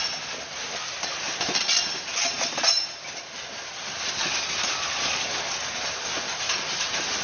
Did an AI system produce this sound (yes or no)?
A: no